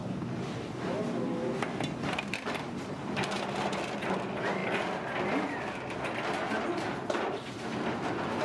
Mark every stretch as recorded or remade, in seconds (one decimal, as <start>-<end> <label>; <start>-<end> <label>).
0.0-8.4 recorded